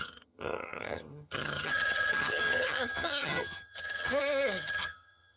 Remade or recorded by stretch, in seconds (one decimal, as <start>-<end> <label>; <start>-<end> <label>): 0.0-5.4 remade